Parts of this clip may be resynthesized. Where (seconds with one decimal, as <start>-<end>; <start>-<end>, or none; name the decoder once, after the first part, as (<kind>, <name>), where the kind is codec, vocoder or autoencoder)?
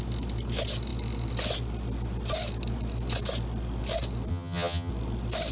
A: 4.3-4.9 (vocoder, HiFi-GAN)